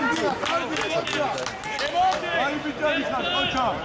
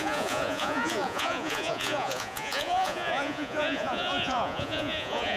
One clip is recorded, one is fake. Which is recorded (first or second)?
first